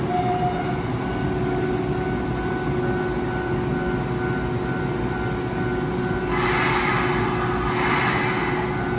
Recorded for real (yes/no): yes